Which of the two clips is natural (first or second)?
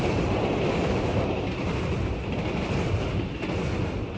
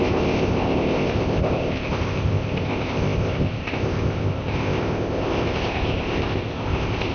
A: first